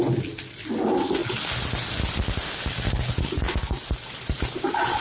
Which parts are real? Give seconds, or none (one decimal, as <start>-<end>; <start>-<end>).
0.0-5.0